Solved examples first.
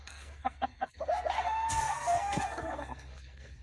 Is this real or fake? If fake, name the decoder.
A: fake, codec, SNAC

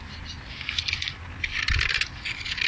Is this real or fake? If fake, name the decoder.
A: real